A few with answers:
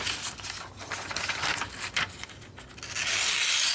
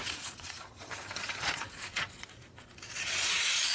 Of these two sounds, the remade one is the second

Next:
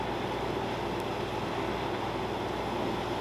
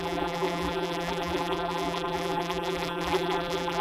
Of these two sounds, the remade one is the second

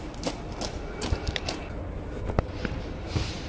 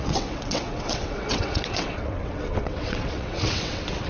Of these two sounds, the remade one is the second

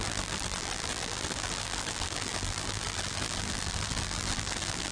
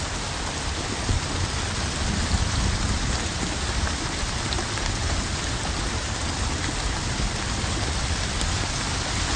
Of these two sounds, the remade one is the first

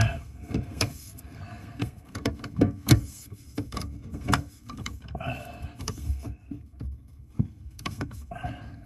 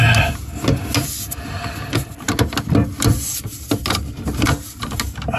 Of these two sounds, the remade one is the first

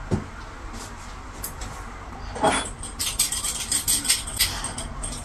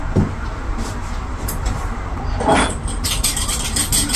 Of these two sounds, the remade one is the second